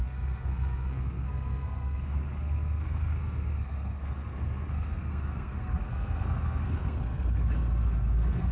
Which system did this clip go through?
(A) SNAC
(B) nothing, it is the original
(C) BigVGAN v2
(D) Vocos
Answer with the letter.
A